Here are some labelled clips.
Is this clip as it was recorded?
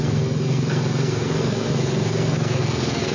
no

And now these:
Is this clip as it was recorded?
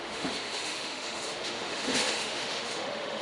no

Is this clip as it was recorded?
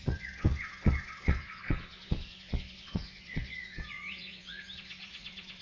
no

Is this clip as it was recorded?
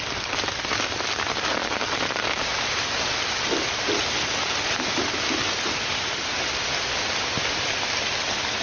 yes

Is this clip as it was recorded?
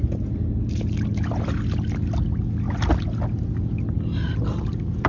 yes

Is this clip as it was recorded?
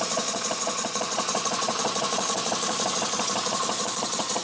no